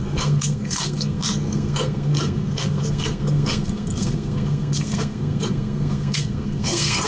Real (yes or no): no